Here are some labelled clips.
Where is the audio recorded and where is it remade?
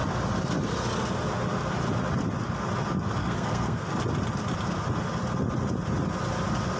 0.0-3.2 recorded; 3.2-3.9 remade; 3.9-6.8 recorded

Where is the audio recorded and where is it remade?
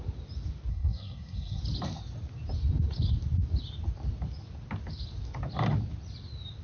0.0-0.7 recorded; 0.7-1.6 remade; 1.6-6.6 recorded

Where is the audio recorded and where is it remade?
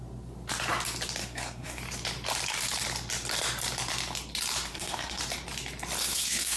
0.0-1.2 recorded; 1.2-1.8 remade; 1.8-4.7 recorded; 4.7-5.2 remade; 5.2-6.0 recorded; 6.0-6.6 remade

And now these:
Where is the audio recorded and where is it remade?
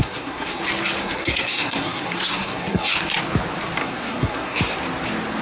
0.0-0.6 remade; 0.6-1.0 recorded; 1.0-2.9 remade; 2.9-3.8 recorded; 3.8-4.6 remade; 4.6-5.4 recorded